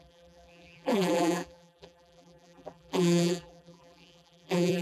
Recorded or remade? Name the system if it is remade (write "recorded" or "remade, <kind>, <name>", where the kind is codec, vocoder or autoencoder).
remade, vocoder, BigVGAN v2